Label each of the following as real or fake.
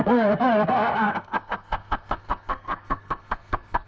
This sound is fake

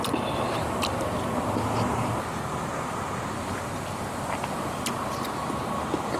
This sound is real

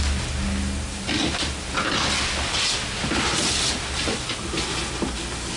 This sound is real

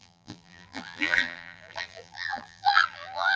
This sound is fake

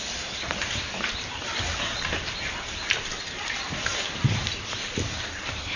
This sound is fake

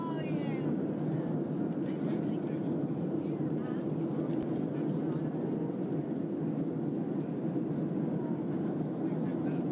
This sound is real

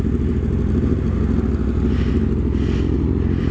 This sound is real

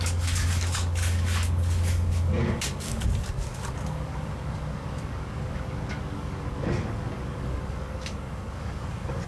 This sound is fake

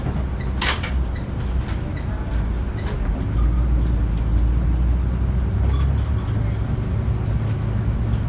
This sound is real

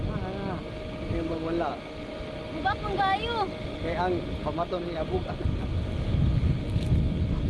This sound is real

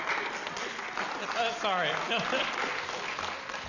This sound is real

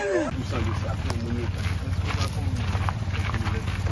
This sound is real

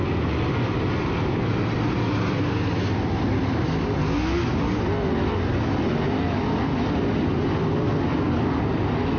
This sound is real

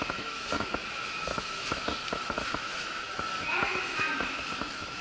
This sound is fake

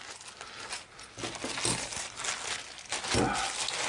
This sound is real